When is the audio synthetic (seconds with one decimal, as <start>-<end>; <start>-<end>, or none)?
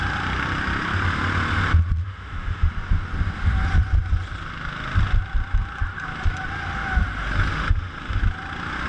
2.0-2.7; 7.5-8.2